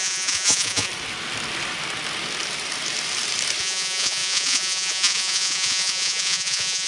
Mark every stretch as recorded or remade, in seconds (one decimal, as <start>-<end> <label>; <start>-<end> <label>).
0.0-0.9 remade; 0.9-3.6 recorded; 3.6-6.9 remade